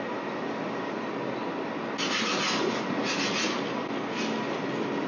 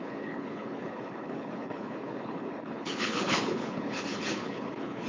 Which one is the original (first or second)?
first